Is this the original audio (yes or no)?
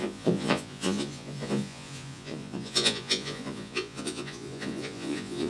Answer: no